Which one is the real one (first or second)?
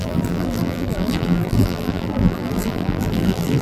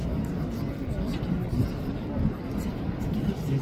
second